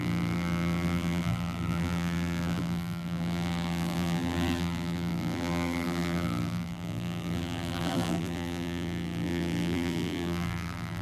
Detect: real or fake fake